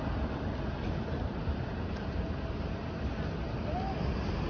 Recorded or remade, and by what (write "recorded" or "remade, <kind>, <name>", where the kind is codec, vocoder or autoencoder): recorded